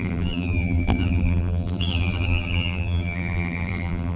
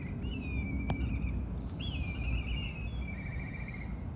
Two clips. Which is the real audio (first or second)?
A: second